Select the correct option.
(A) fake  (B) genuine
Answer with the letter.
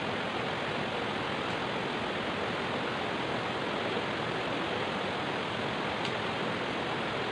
B